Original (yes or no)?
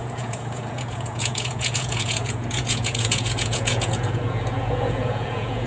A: no